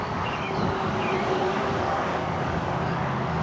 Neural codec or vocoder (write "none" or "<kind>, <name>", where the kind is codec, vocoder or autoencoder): codec, DAC